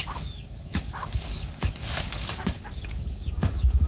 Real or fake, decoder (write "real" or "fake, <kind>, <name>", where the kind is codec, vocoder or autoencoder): fake, codec, DAC